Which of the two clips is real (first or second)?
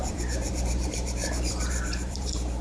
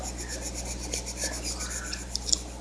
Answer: second